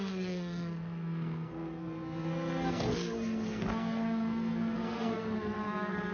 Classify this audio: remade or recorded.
remade